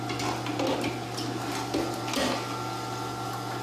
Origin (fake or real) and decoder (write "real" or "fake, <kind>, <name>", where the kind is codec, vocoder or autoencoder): real